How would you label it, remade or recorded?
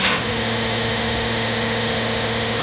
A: remade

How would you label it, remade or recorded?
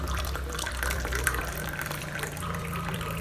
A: remade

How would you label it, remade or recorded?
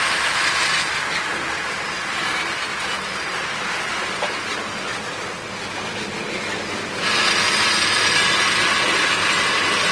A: recorded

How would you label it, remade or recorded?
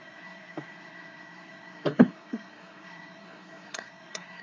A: remade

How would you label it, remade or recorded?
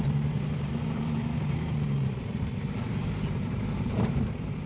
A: remade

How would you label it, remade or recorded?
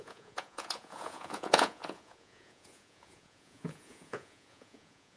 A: remade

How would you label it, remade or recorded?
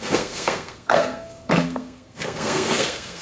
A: remade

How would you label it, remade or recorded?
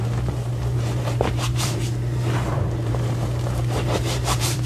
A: remade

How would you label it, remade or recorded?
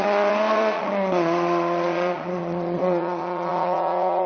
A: remade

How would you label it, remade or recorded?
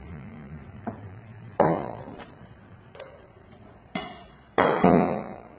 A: remade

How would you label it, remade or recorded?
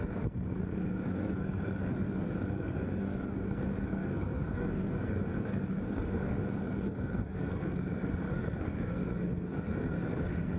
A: remade